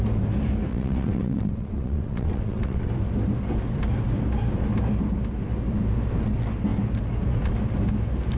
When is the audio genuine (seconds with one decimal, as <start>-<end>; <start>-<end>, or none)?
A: 0.0-0.7; 2.9-8.4

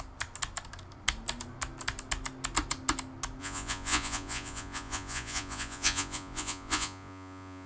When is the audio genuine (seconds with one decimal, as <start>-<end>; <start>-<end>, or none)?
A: 0.0-3.4